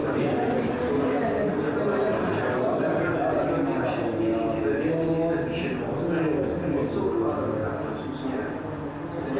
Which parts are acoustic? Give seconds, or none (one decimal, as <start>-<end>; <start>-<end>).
0.0-9.4